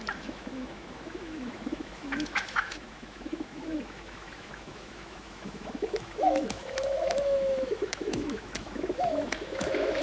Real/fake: fake